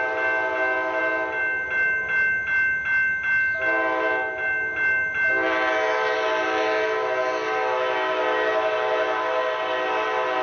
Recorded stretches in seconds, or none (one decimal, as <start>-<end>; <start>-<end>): 0.0-10.4